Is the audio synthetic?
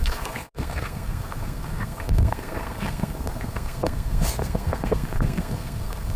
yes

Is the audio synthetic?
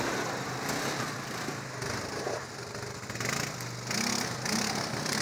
no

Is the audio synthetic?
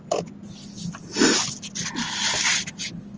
no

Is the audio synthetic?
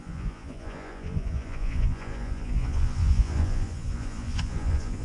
yes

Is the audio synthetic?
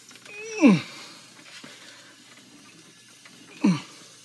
no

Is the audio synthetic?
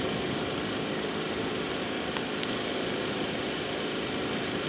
no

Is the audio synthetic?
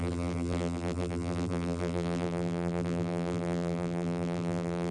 yes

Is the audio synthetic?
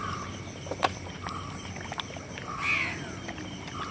no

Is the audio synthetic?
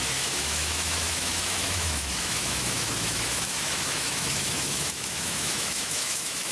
yes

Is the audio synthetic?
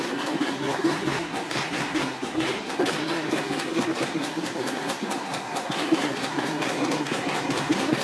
yes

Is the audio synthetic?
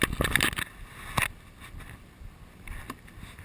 no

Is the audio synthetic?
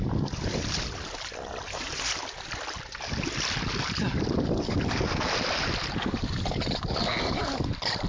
no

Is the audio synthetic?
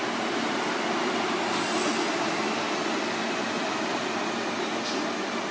no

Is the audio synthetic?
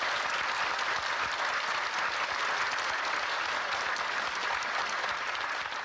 no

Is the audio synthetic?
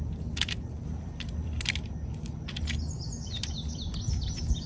no